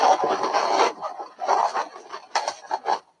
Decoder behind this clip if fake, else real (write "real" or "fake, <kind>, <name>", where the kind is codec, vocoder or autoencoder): real